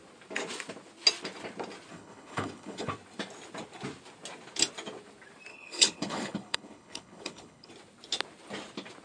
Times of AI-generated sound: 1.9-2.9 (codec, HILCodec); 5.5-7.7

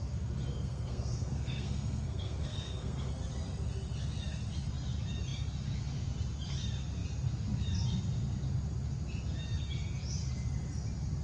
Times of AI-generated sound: 0.5-3.1 (codec, SNAC)

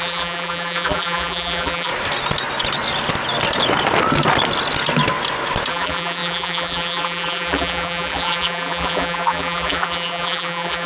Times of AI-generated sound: 0.0-1.9 (vocoder, BigVGAN v2); 5.7-10.9

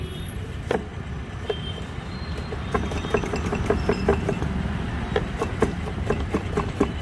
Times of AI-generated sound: 0.0-0.9 (vocoder, BigVGAN v2); 3.2-7.0

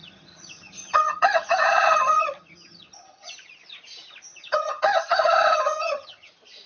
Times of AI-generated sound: 0.0-3.3 (vocoder, HiFi-GAN); 4.3-6.3